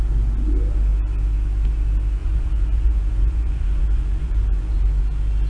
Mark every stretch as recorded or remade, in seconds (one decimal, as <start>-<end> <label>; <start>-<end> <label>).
0.0-2.2 recorded; 2.2-5.0 remade; 5.0-5.5 recorded